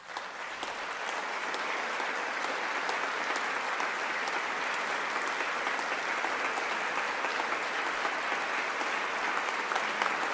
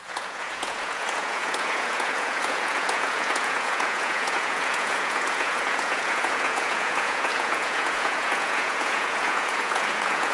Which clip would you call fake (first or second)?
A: second